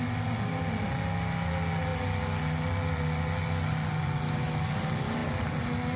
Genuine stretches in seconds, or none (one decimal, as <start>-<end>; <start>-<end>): 0.0-6.0